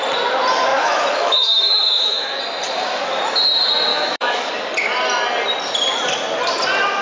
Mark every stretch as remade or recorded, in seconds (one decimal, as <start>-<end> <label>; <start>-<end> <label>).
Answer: 0.0-0.7 recorded; 0.7-2.4 remade; 2.4-3.9 recorded; 3.9-4.5 remade; 4.5-7.0 recorded